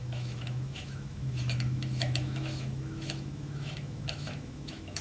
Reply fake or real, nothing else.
fake